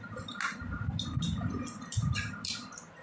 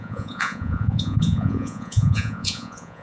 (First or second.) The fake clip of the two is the second